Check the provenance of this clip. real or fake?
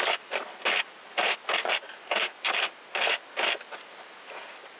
real